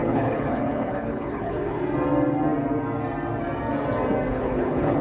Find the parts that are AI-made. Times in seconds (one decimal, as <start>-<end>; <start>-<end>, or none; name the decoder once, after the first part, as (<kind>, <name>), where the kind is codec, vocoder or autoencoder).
0.0-1.8 (codec, HILCodec); 4.3-5.0

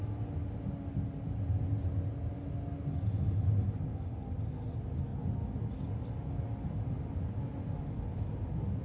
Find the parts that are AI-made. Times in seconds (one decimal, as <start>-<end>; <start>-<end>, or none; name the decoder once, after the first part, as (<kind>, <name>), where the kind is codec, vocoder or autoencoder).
none

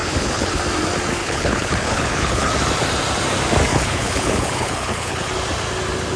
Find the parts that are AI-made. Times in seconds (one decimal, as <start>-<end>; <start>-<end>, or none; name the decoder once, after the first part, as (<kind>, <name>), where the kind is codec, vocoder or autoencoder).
0.0-0.6 (codec, HILCodec); 1.2-2.5; 3.7-5.3

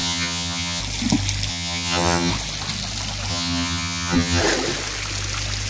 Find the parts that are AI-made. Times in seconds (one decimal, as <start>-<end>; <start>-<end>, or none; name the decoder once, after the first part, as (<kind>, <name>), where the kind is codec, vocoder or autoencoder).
0.0-0.8 (vocoder, HiFi-GAN); 1.5-2.3; 3.3-4.4

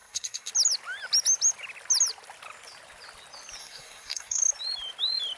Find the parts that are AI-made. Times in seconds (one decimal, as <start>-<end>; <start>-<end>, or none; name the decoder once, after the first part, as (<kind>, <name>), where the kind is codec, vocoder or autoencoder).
0.0-0.5 (codec, SNAC); 3.6-4.4